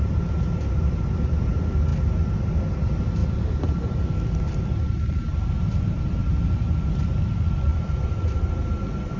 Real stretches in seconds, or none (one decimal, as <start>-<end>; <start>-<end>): 0.0-3.2; 4.6-6.2; 6.9-7.7; 8.5-9.2